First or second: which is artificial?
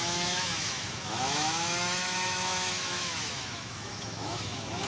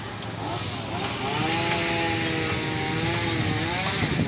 first